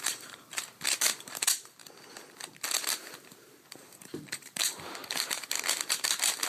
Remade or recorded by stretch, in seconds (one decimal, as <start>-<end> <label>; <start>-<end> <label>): 0.0-0.6 remade; 0.6-1.2 recorded; 1.2-1.8 remade; 1.8-3.2 recorded; 3.2-5.0 remade; 5.0-6.5 recorded